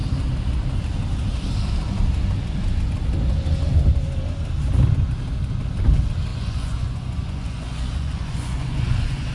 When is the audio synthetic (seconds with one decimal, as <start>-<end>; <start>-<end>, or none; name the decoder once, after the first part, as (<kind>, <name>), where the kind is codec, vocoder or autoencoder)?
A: 6.3-9.3 (vocoder, Vocos)